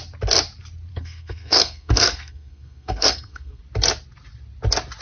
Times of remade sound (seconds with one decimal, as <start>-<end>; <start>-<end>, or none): 0.9-3.6